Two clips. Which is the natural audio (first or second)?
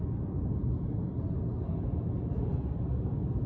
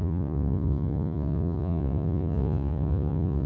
first